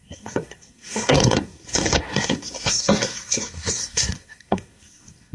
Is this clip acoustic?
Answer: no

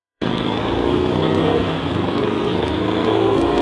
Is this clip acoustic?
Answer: no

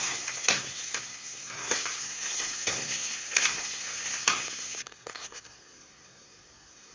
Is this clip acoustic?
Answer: no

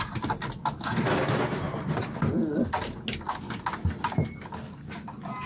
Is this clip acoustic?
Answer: yes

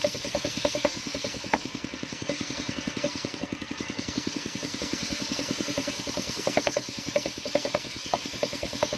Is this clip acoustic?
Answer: no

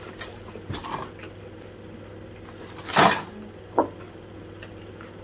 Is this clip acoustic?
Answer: yes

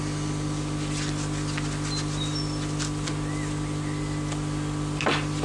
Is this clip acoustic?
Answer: yes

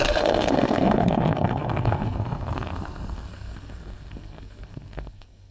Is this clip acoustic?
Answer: no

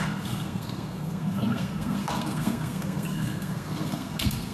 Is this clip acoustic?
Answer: no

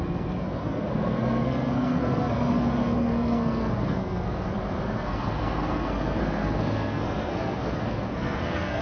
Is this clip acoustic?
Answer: no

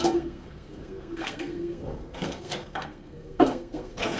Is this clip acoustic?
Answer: no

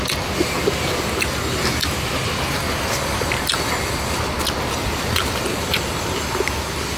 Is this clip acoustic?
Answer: yes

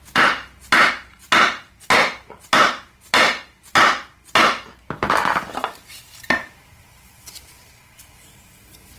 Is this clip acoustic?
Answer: yes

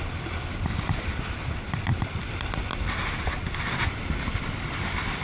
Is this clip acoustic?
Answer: yes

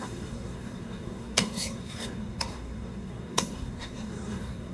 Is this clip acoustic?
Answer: no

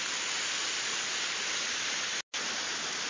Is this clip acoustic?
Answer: yes